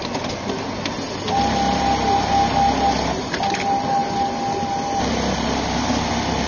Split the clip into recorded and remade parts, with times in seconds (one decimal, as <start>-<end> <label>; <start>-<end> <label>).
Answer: 0.0-6.5 recorded